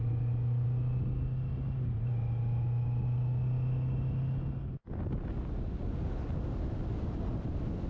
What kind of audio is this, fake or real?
real